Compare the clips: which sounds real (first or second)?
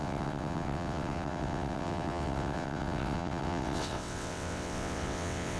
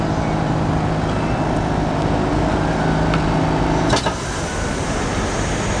second